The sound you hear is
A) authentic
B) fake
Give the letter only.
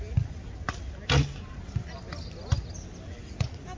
A